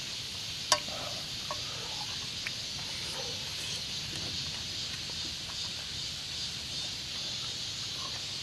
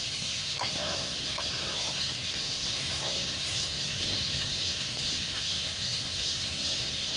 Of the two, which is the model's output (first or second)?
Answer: second